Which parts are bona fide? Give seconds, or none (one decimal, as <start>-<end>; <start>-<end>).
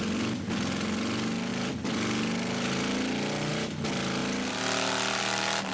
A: 0.0-5.7